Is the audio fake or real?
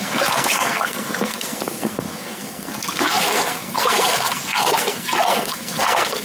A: fake